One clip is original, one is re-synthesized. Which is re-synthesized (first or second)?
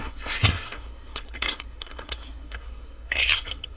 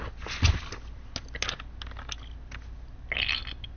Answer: first